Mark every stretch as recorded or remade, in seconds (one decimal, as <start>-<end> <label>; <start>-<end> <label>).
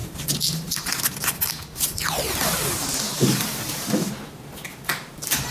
0.0-5.5 recorded